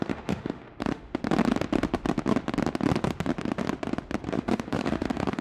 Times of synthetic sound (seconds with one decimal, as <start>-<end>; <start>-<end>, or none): 0.0-1.1; 4.3-5.4